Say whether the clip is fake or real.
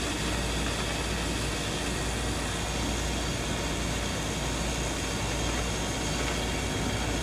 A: real